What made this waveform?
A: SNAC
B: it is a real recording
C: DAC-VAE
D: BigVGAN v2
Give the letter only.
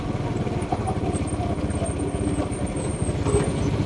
B